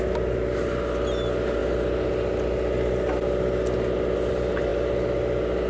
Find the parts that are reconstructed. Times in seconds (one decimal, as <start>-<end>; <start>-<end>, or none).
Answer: none